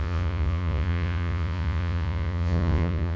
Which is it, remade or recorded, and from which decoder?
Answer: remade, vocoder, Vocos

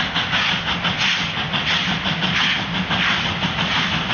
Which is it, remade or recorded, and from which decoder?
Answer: recorded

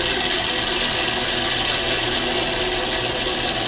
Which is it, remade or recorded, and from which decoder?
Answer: recorded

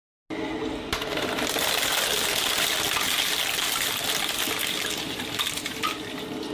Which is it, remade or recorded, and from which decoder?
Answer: recorded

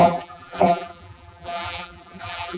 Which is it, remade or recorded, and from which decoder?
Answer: remade, vocoder, BigVGAN v2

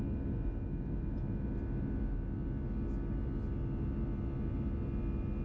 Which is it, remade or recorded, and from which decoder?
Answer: recorded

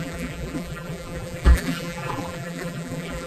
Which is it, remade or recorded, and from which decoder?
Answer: remade, vocoder, BigVGAN v2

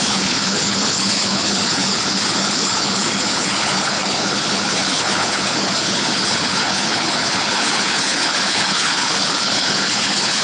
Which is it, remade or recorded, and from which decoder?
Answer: remade, codec, HILCodec